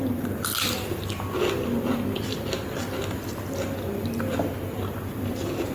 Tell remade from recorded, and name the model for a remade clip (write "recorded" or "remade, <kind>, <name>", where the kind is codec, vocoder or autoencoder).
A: recorded